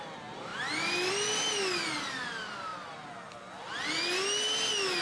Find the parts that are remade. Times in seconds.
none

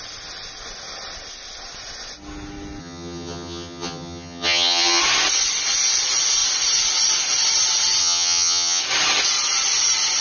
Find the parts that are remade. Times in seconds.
2.8-5.0; 8.0-8.8

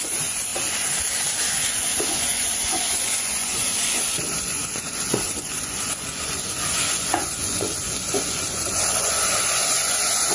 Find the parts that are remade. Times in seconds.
0.0-0.5; 1.5-10.3

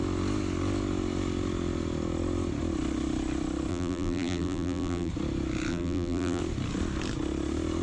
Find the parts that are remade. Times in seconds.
3.7-5.1; 5.7-6.4